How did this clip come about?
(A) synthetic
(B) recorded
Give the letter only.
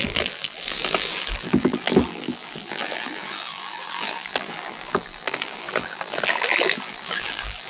A